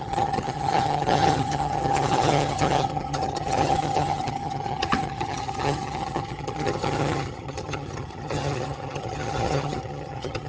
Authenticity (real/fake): fake